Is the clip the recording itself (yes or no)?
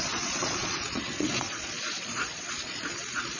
no